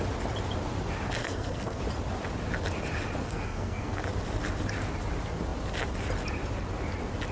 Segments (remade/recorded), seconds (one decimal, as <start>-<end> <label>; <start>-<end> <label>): 0.0-1.2 recorded; 1.2-1.8 remade; 1.8-3.2 recorded; 3.2-4.0 remade; 4.0-7.3 recorded